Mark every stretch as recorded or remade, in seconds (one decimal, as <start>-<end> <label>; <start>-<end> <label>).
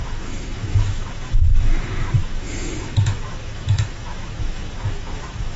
0.0-5.6 remade